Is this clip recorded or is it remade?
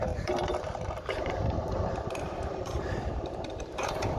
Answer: remade